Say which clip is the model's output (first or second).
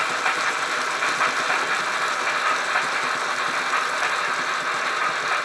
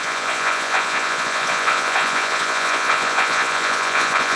second